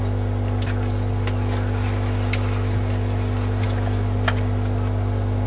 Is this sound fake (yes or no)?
no